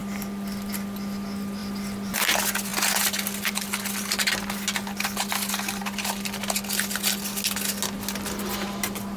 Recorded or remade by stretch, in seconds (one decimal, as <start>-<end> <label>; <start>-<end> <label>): 0.0-0.7 remade; 0.7-9.2 recorded